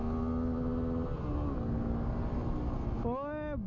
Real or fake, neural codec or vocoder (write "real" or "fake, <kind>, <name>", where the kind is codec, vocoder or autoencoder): real